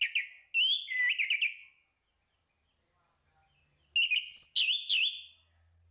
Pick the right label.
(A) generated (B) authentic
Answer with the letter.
B